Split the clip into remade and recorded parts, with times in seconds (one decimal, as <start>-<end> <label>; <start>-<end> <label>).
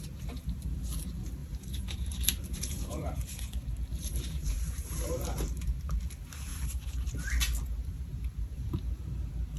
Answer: 0.0-1.4 recorded; 1.4-5.8 remade; 5.8-6.5 recorded; 6.5-7.1 remade; 7.1-7.8 recorded; 7.8-9.1 remade; 9.1-9.6 recorded